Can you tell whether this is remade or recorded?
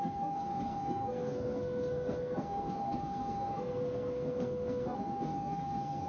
remade